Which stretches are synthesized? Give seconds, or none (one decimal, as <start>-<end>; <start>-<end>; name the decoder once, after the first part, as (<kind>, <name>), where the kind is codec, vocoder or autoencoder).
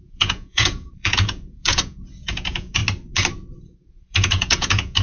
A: 0.0-2.8 (vocoder, Vocos); 3.9-5.0